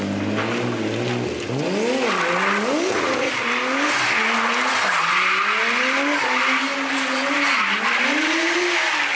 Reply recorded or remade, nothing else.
recorded